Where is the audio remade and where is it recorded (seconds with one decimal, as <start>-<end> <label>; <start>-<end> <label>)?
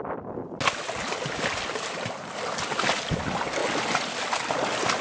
0.0-5.0 recorded